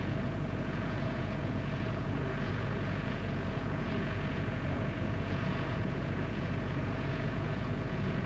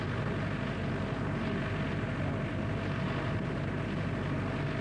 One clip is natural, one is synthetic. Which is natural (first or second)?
second